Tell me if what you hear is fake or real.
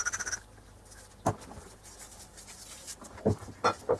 real